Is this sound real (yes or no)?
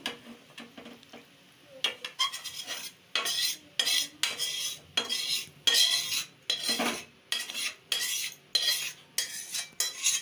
yes